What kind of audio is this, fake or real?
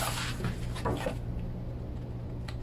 real